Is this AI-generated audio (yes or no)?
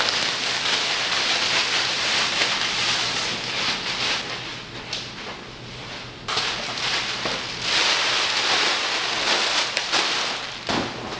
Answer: no